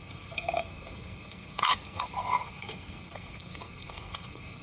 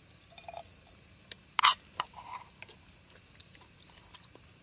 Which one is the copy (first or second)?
first